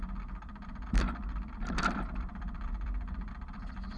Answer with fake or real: fake